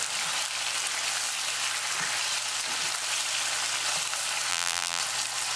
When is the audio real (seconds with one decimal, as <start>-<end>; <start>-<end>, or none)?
0.0-4.5; 5.0-5.6